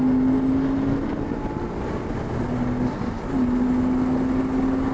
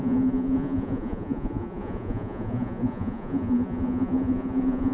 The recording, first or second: first